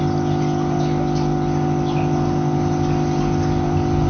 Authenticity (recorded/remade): recorded